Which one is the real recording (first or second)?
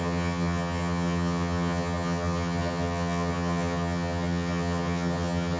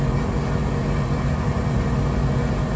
second